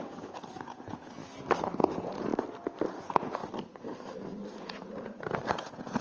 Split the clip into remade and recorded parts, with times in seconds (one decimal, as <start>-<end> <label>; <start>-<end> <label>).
0.0-1.2 remade; 1.2-1.8 recorded; 1.8-2.3 remade; 2.3-2.9 recorded; 2.9-3.4 remade; 3.4-4.6 recorded; 4.6-6.0 remade